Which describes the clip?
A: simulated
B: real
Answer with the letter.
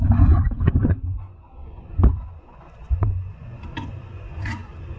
A